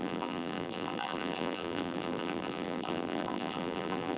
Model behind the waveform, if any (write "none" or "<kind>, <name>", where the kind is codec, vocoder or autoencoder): vocoder, BigVGAN v2